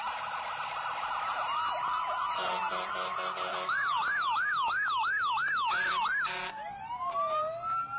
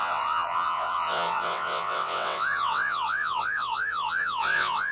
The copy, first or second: second